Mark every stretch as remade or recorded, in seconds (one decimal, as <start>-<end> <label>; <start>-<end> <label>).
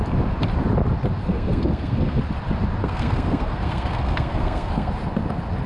0.0-1.2 recorded; 1.2-2.2 remade; 2.2-2.8 recorded; 2.8-4.9 remade; 4.9-5.7 recorded